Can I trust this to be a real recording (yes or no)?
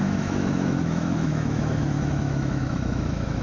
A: no